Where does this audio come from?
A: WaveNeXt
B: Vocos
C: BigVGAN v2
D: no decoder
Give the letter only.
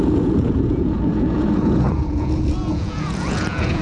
B